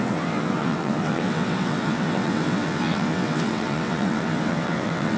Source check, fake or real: fake